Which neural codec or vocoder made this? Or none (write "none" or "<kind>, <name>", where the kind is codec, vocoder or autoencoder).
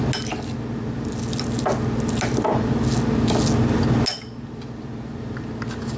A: none